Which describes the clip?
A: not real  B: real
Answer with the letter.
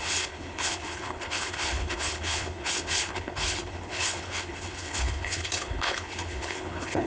A